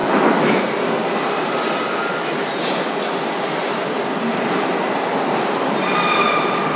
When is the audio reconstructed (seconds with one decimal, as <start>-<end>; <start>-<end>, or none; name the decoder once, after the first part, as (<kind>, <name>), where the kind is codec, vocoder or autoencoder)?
0.0-0.6 (autoencoder, DAC-VAE)